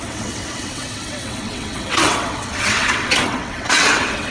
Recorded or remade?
remade